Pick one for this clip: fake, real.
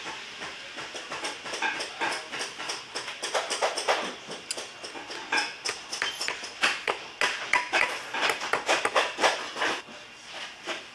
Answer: real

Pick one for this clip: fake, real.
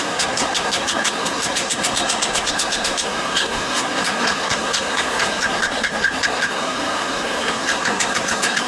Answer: fake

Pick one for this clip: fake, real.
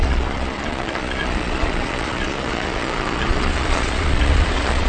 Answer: fake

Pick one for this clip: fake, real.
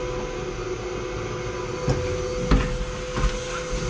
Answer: real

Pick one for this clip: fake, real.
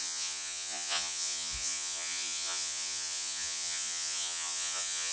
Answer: fake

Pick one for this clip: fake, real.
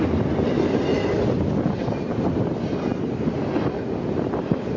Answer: real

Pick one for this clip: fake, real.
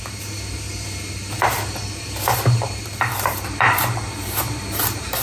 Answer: fake